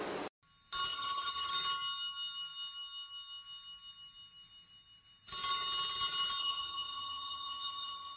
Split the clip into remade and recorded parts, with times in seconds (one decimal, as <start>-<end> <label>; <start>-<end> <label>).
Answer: 0.0-0.9 recorded; 0.9-1.5 remade; 1.5-6.4 recorded; 6.4-8.2 remade